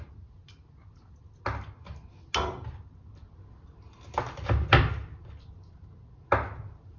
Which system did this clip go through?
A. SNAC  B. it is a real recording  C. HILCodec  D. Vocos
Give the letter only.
B